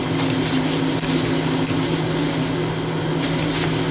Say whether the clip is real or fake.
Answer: real